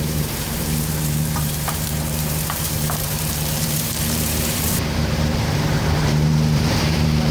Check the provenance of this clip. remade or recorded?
remade